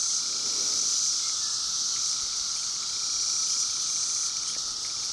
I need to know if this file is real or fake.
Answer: real